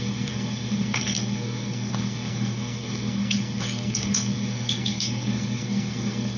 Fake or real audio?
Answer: fake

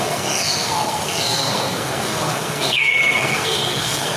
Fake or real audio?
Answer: fake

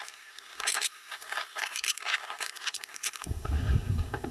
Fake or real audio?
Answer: fake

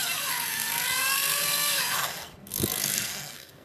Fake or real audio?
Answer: fake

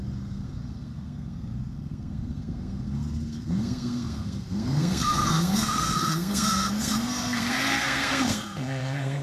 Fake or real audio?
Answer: fake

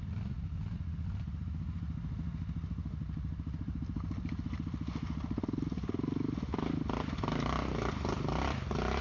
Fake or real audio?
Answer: real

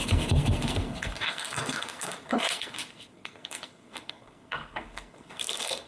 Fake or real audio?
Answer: fake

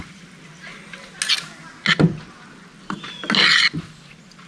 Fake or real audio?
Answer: real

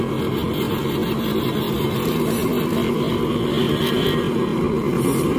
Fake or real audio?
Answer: real